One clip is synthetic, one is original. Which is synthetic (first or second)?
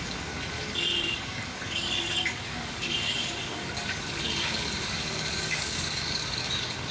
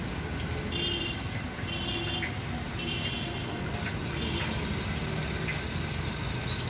first